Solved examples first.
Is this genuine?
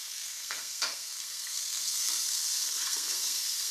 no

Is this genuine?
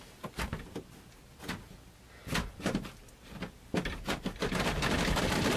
yes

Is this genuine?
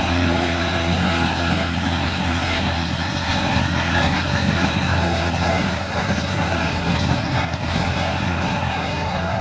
no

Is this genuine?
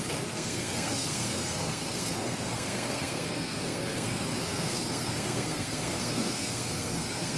no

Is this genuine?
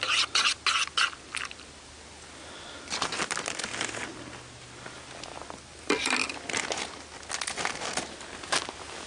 yes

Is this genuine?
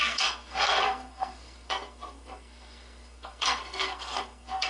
no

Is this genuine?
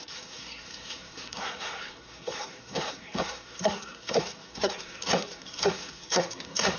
no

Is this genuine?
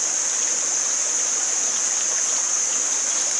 yes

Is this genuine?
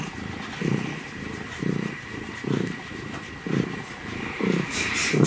yes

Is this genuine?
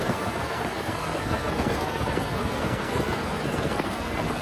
no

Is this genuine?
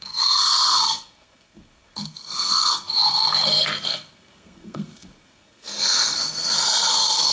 no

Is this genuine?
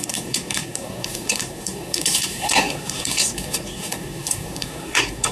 no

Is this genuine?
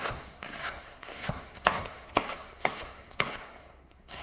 no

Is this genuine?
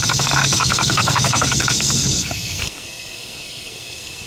no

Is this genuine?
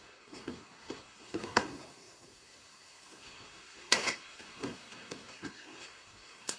no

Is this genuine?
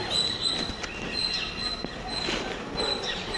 yes